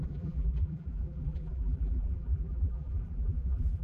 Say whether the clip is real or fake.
fake